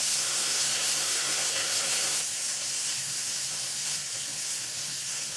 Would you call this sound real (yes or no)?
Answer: no